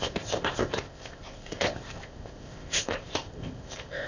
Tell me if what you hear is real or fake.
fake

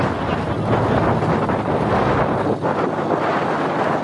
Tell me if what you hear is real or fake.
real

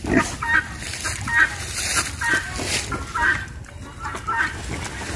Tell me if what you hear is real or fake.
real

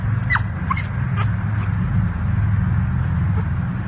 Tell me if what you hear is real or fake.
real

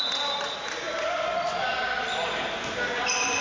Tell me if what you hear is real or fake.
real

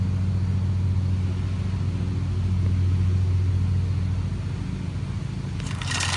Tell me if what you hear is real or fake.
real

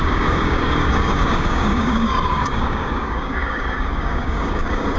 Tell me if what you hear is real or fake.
fake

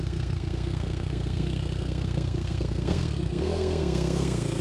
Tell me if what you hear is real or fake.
fake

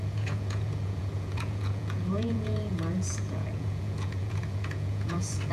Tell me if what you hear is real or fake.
fake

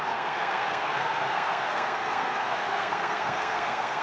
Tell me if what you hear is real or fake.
fake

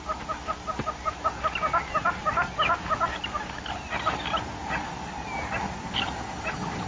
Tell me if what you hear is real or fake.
real